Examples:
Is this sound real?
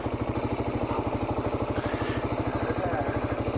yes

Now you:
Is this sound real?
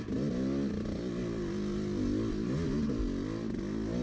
yes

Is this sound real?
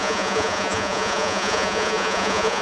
no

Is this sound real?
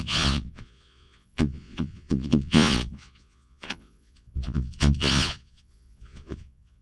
no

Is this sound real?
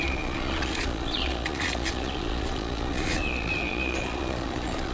no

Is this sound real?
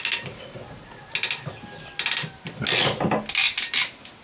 yes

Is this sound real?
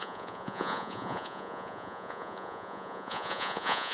no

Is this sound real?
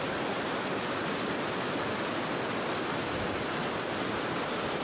yes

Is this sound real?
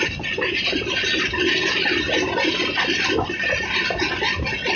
yes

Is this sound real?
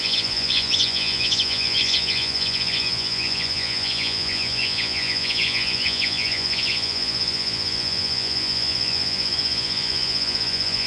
no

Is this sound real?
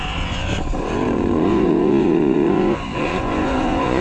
no